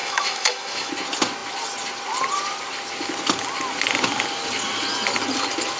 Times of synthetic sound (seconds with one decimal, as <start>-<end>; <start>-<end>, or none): 0.0-0.9